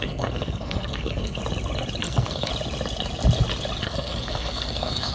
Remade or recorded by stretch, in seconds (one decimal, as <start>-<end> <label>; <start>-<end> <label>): 0.0-1.4 remade; 1.4-2.0 recorded; 2.0-2.5 remade; 2.5-3.8 recorded; 3.8-5.1 remade